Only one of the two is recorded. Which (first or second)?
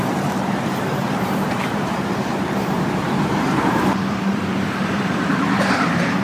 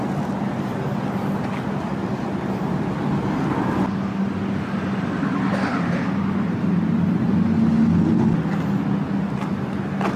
second